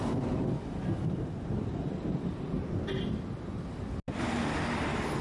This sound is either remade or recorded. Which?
recorded